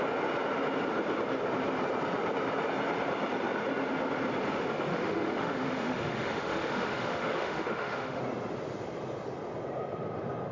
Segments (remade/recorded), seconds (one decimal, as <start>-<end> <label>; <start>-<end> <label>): 0.0-4.9 recorded; 4.9-8.2 remade; 8.2-10.5 recorded